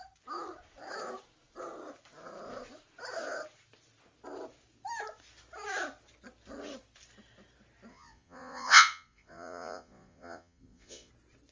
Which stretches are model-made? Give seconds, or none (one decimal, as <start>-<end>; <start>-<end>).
7.9-11.1